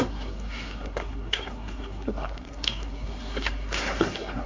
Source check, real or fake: fake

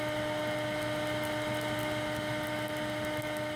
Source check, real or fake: real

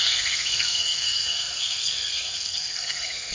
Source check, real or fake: fake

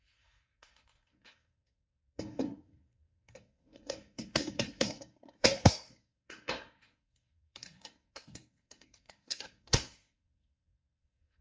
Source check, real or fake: fake